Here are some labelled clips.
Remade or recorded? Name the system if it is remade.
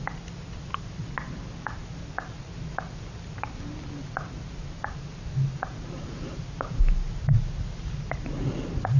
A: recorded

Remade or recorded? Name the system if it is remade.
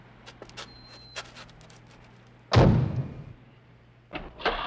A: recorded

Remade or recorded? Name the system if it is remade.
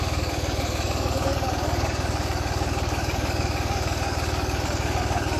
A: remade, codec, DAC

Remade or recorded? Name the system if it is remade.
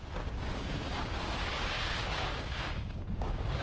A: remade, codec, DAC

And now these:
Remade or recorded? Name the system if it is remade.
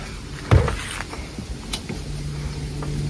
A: recorded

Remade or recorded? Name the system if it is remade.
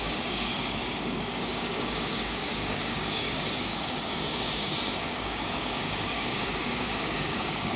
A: remade, codec, DAC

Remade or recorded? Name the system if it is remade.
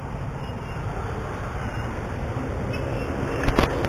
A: recorded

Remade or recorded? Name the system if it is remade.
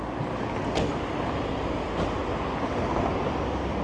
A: recorded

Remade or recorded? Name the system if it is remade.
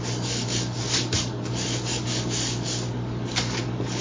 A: remade, codec, DAC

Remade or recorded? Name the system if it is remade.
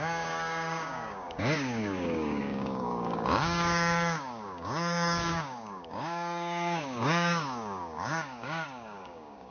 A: remade, codec, DAC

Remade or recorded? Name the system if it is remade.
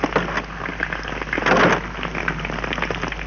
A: recorded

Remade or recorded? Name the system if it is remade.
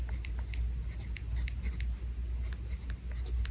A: recorded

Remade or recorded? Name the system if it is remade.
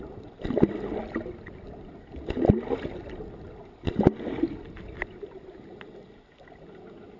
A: recorded